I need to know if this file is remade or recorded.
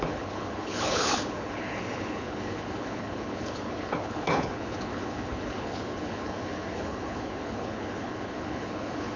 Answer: remade